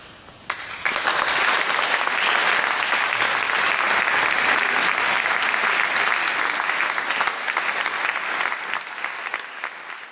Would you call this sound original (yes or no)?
yes